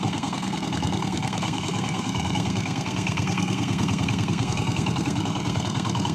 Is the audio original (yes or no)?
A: no